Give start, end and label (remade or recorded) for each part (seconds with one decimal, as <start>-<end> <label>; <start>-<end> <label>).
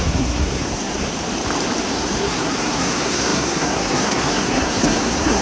0.0-1.1 remade; 1.1-1.9 recorded; 1.9-5.4 remade